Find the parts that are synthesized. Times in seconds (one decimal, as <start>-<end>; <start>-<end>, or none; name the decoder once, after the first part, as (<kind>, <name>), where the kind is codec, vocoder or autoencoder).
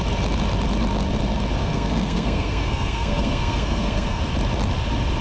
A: 1.6-4.2 (codec, SNAC)